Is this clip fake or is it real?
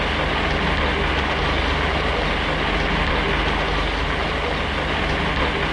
real